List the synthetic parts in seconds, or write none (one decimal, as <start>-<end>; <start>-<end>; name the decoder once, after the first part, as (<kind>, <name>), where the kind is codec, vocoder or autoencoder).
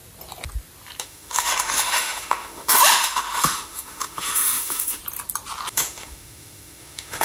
1.0-5.0 (autoencoder, DAC-VAE); 5.7-7.2